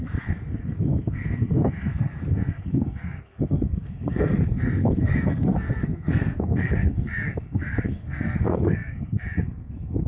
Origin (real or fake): fake